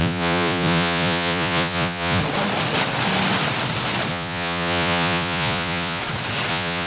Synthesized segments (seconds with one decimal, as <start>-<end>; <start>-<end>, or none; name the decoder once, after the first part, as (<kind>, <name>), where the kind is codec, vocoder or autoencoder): 0.0-2.2 (vocoder, Vocos); 4.1-6.0; 6.5-6.9